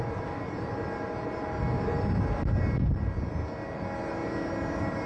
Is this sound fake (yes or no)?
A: no